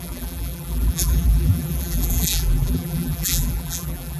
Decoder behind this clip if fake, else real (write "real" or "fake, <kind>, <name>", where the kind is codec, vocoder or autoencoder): fake, vocoder, BigVGAN v2